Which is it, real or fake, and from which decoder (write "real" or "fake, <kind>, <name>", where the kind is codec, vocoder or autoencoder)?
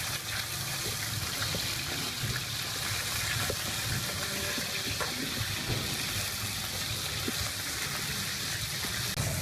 real